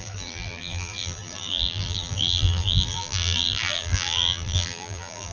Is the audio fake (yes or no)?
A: yes